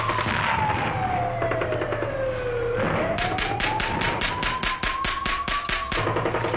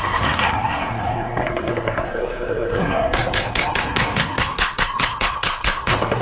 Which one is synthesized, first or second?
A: second